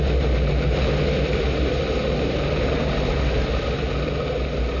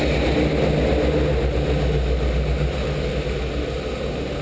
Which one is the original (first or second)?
second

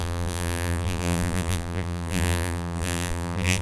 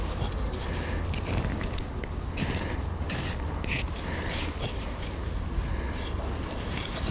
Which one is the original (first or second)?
second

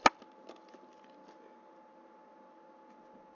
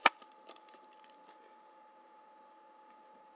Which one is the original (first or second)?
first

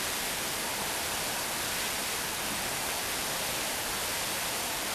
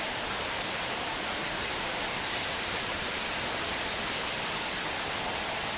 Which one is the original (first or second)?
second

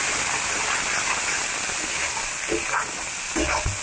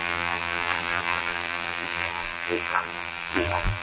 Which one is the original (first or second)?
first